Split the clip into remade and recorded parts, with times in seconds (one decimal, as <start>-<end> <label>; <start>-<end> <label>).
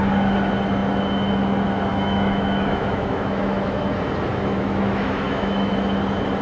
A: 0.0-1.9 recorded; 1.9-3.8 remade; 3.8-4.3 recorded; 4.3-5.7 remade; 5.7-6.4 recorded